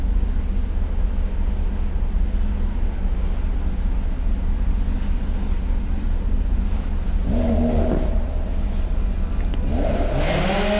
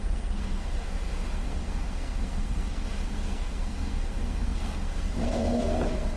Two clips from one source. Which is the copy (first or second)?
second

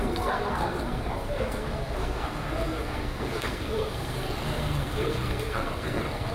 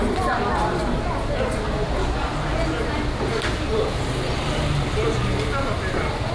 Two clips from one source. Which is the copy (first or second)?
first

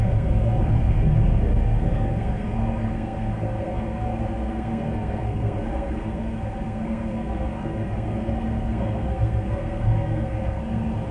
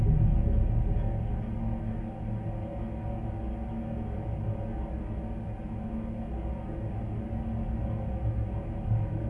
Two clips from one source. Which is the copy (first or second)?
first